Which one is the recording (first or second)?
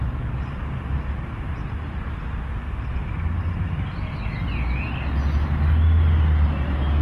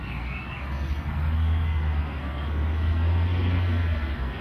first